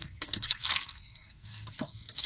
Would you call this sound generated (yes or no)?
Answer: yes